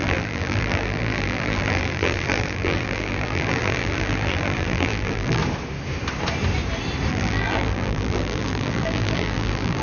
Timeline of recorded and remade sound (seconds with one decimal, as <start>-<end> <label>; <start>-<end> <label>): 0.0-5.4 remade; 5.4-7.1 recorded; 7.1-9.8 remade